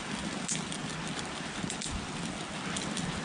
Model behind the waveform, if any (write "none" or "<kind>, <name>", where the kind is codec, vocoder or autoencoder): none